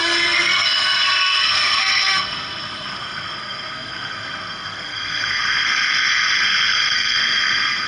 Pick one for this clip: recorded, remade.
remade